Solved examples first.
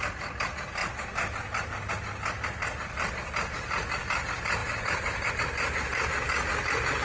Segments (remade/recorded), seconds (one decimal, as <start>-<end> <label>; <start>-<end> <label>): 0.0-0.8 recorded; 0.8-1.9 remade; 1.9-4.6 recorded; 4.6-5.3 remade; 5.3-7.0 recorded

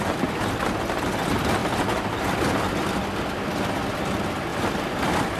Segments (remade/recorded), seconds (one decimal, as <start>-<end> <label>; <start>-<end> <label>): 0.0-4.5 recorded; 4.5-5.4 remade

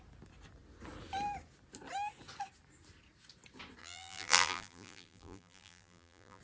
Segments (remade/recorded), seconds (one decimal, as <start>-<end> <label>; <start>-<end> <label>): 0.0-3.8 recorded; 3.8-6.4 remade